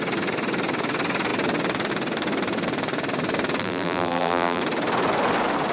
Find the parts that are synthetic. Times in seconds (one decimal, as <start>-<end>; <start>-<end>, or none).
3.6-4.6